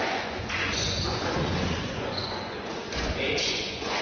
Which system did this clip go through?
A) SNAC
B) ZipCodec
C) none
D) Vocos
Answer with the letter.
D